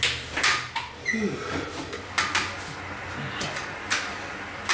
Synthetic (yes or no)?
no